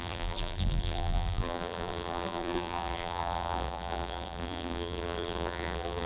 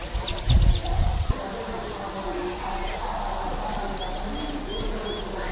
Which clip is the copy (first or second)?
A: first